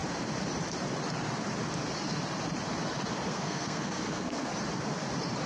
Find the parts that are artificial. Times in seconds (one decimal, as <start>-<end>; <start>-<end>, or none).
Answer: 3.3-4.5